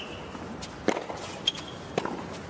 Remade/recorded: recorded